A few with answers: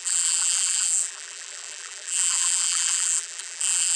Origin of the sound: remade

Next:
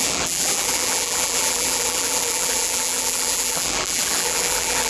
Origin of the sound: remade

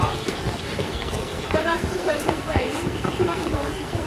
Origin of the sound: remade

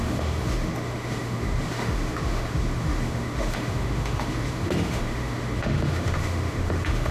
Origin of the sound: remade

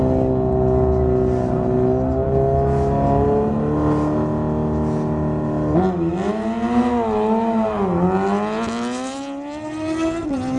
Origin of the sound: recorded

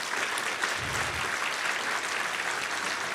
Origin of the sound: recorded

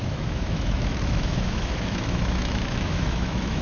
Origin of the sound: remade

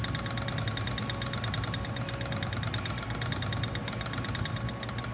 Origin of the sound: recorded